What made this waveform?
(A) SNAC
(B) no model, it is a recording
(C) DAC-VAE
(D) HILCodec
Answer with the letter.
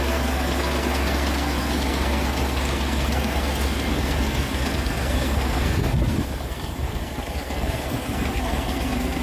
A